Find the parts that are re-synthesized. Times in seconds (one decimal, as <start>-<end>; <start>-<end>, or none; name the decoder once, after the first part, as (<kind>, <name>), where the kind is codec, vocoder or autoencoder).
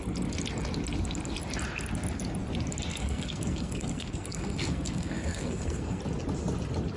2.9-6.0 (codec, SNAC)